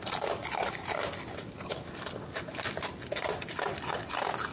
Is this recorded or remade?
recorded